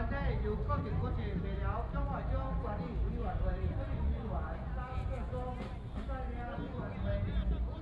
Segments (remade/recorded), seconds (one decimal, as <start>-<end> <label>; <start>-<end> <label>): 0.0-3.2 recorded; 3.2-4.7 remade; 4.7-7.8 recorded

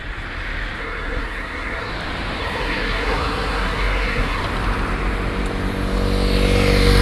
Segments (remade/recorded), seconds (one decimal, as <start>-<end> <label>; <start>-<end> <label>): 0.0-0.8 recorded; 0.8-1.9 remade; 1.9-2.4 recorded; 2.4-4.4 remade; 4.4-7.0 recorded

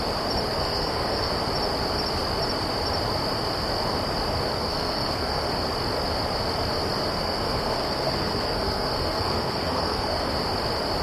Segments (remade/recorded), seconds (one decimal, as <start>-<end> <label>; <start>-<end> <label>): 0.0-0.6 recorded; 0.6-1.3 remade; 1.3-4.6 recorded; 4.6-5.5 remade; 5.5-7.2 recorded; 7.2-10.3 remade; 10.3-11.0 recorded